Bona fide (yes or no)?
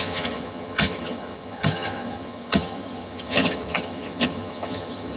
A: no